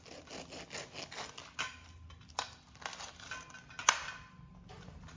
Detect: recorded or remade recorded